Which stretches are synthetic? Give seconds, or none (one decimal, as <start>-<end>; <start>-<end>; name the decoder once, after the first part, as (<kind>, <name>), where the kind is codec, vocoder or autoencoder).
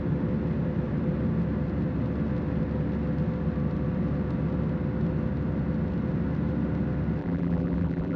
7.2-8.2 (vocoder, BigVGAN v2)